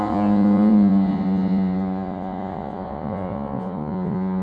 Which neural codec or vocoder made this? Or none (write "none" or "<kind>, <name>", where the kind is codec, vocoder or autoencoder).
vocoder, Vocos